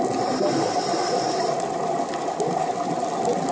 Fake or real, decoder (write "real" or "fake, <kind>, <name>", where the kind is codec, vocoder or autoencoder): real